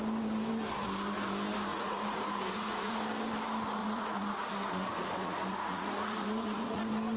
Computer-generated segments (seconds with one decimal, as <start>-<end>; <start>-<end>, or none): 1.7-3.0; 3.8-6.8